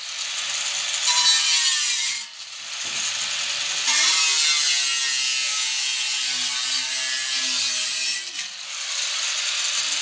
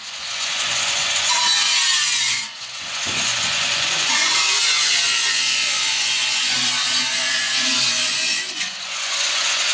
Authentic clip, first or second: first